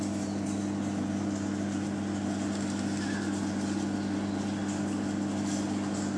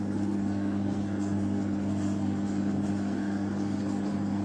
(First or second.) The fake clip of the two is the second